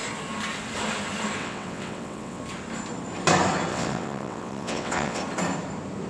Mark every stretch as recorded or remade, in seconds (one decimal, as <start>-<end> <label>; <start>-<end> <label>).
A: 0.0-1.4 recorded; 1.4-2.4 remade; 2.4-3.7 recorded; 3.7-5.2 remade; 5.2-6.1 recorded